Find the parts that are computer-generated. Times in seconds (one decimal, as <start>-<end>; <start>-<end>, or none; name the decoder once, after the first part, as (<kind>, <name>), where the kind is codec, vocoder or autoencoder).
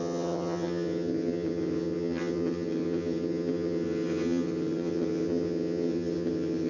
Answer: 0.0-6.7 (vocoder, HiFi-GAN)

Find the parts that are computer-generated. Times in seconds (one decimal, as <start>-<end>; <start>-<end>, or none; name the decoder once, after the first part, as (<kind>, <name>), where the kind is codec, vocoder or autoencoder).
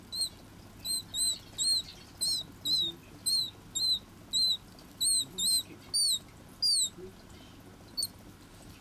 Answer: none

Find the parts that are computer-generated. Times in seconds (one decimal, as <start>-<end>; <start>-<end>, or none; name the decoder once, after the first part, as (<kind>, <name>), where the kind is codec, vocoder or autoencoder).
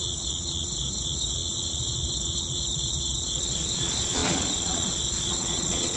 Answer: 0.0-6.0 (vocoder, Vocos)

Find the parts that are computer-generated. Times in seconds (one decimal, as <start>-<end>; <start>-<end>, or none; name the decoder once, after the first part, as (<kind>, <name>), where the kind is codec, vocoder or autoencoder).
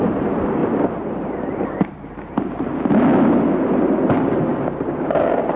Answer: 0.0-0.6 (vocoder, BigVGAN v2); 1.8-2.7; 4.6-5.6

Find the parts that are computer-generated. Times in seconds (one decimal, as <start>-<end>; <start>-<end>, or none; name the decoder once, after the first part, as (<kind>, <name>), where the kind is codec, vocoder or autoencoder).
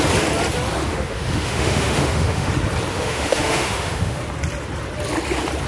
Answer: 0.9-2.5 (autoencoder, DAC-VAE); 2.9-4.2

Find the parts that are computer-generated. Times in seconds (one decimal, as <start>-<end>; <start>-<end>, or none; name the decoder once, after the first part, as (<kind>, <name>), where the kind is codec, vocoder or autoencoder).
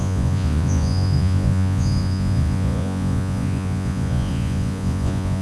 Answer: 0.0-5.4 (vocoder, Vocos)